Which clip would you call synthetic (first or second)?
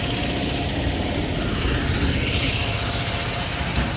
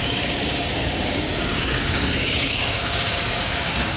second